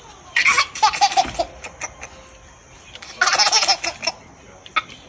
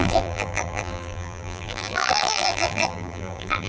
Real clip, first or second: first